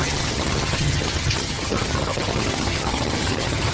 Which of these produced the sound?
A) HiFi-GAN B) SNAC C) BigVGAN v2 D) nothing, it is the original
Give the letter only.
A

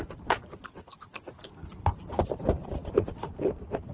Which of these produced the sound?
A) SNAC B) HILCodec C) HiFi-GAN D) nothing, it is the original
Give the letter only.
D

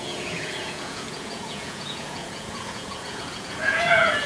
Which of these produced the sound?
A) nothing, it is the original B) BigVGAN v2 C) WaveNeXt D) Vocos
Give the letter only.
D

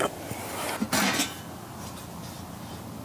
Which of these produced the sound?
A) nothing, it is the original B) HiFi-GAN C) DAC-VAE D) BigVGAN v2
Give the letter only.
A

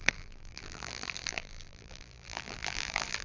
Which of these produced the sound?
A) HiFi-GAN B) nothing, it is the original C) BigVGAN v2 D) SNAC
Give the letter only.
C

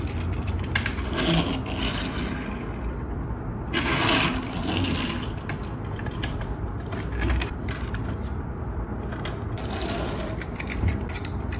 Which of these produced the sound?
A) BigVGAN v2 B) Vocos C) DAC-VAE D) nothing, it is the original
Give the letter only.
D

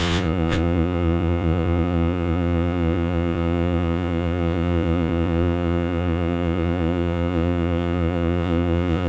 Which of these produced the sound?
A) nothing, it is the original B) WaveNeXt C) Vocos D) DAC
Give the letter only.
C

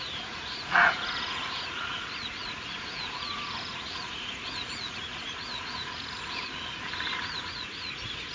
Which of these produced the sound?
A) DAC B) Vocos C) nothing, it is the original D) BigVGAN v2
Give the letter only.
B